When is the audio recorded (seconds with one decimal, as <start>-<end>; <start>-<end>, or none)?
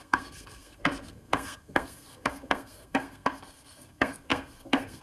none